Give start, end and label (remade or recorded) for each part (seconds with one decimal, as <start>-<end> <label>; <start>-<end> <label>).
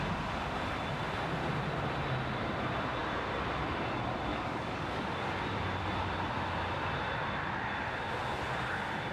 0.0-4.3 recorded; 4.3-5.4 remade; 5.4-9.1 recorded